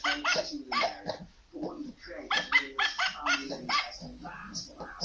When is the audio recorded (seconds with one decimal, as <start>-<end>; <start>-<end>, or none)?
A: 0.0-5.0